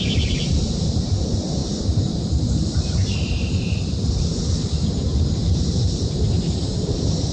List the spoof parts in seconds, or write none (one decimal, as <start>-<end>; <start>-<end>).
0.0-7.3